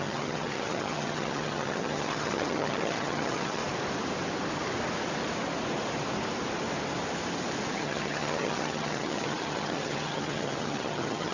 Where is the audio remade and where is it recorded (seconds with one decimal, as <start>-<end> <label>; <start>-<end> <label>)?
0.0-3.6 remade; 3.6-7.7 recorded; 7.7-11.3 remade